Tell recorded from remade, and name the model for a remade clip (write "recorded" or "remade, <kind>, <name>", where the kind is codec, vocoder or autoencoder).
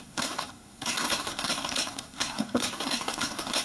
remade, codec, SNAC